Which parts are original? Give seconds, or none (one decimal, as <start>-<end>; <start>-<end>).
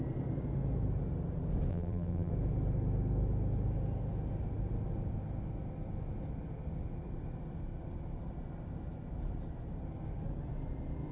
0.0-1.7; 2.3-11.1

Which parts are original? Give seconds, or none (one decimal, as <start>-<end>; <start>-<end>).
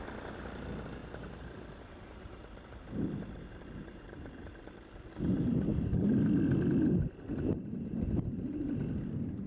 0.0-1.0; 5.1-7.3; 8.6-9.5